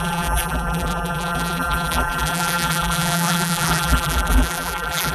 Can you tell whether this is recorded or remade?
remade